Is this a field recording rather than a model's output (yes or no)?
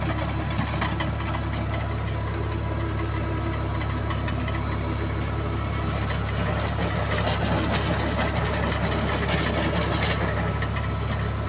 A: yes